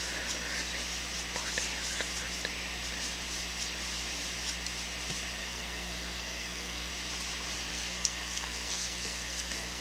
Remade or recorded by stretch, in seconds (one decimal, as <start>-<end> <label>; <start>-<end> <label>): 0.0-5.4 recorded; 5.4-6.9 remade; 6.9-7.7 recorded; 7.7-9.8 remade